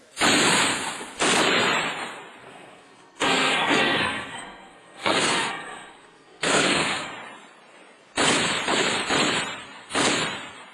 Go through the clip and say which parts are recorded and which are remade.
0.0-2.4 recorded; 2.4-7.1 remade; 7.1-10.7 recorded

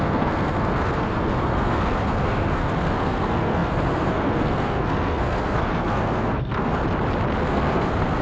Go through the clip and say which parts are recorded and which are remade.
0.0-6.8 remade; 6.8-7.4 recorded; 7.4-8.2 remade

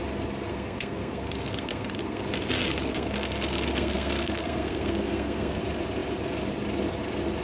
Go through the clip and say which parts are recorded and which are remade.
0.0-0.5 recorded; 0.5-2.2 remade; 2.2-2.8 recorded; 2.8-5.6 remade; 5.6-7.4 recorded

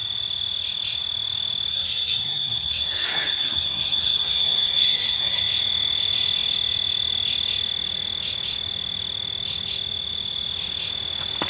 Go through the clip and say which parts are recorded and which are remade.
0.0-1.7 recorded; 1.7-5.4 remade; 5.4-11.5 recorded

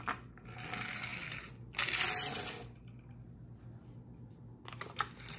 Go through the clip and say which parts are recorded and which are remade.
0.0-5.4 recorded

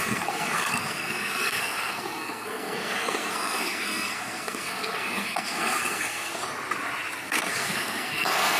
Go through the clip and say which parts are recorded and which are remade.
0.0-6.4 remade; 6.4-7.2 recorded; 7.2-8.6 remade

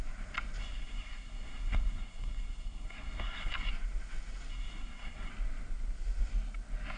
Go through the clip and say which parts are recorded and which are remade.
0.0-0.6 recorded; 0.6-3.7 remade; 3.7-4.5 recorded; 4.5-5.3 remade; 5.3-7.0 recorded